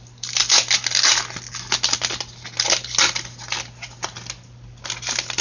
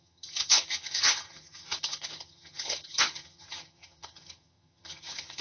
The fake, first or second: second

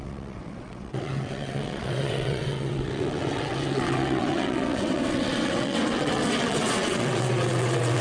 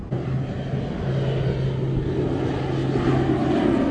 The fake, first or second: first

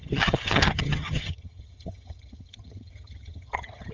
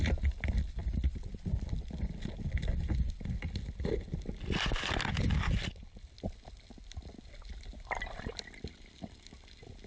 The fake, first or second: first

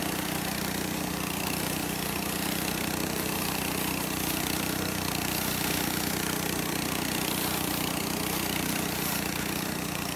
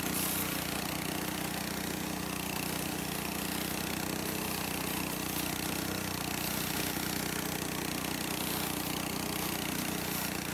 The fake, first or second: first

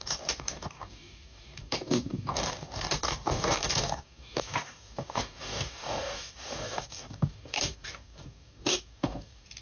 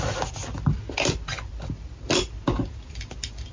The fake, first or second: first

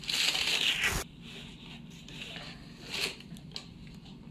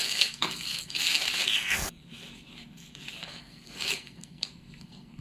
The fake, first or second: second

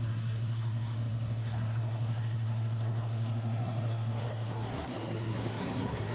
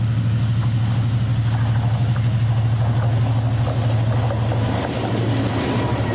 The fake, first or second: first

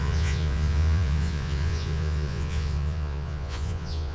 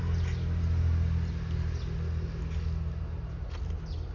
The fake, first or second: first